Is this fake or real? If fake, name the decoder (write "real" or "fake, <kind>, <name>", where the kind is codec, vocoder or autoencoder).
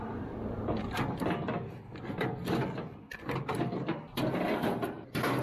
real